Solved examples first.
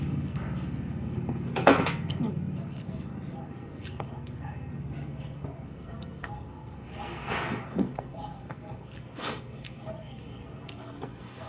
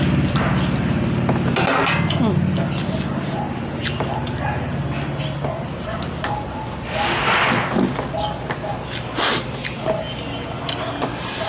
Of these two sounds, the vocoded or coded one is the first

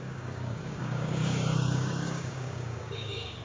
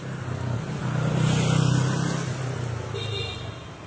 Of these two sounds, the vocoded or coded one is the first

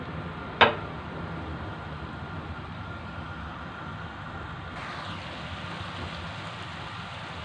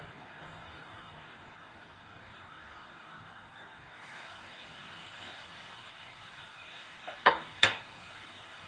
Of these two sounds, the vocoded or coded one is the second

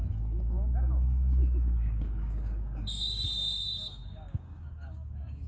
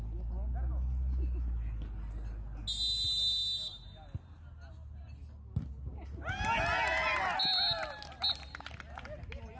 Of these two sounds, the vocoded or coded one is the first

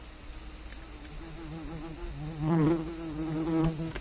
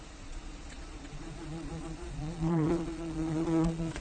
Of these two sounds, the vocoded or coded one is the second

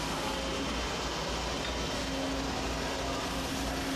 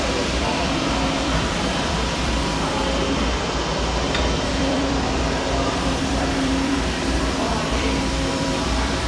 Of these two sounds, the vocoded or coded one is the second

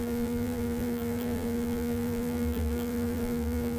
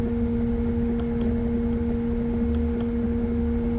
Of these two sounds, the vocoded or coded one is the first